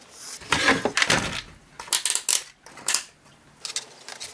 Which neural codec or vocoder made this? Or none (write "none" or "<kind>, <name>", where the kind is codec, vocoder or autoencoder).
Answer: none